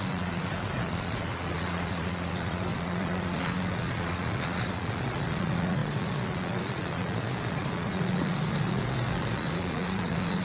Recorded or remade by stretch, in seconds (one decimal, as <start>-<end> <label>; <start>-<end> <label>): 0.0-10.4 remade

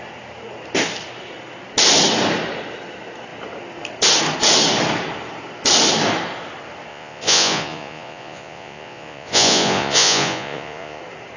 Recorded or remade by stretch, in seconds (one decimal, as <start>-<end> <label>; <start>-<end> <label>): 0.0-6.9 recorded; 6.9-11.0 remade; 11.0-11.4 recorded

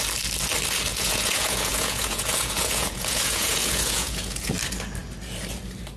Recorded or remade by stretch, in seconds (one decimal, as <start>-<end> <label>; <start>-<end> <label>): 0.0-0.9 recorded; 0.9-4.5 remade; 4.5-6.0 recorded

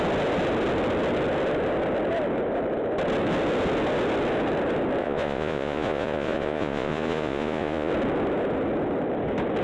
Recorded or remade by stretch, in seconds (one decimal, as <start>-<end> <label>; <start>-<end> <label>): 0.0-5.0 recorded; 5.0-7.9 remade; 7.9-9.6 recorded

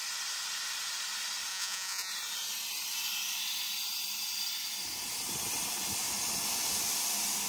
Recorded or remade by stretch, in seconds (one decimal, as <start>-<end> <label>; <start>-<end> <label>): 0.0-1.5 recorded; 1.5-2.1 remade; 2.1-7.5 recorded

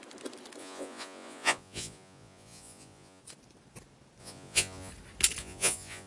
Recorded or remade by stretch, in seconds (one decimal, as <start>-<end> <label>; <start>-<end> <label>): 0.0-0.6 recorded; 0.6-3.2 remade; 3.2-4.2 recorded; 4.2-4.9 remade; 4.9-5.4 recorded; 5.4-6.1 remade

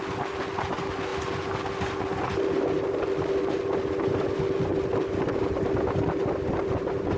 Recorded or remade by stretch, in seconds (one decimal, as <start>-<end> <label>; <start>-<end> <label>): 0.0-7.2 recorded